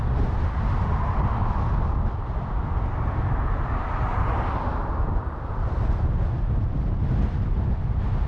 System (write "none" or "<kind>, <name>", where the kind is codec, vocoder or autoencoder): none